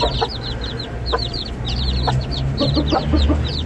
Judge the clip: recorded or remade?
remade